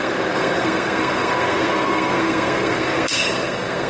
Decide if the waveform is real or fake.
fake